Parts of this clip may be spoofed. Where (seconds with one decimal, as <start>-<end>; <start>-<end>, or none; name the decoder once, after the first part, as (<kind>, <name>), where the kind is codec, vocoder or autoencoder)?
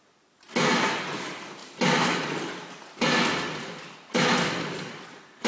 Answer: none